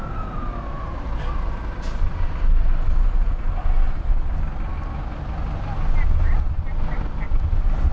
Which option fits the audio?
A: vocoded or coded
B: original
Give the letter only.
B